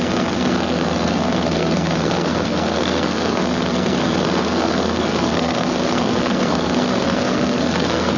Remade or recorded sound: remade